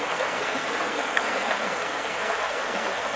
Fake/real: fake